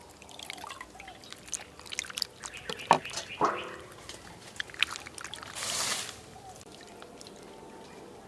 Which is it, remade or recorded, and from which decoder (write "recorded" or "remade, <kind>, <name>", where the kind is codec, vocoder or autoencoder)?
recorded